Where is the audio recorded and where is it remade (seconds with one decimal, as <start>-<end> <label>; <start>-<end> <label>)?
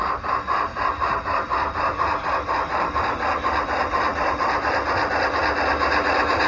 0.0-6.5 recorded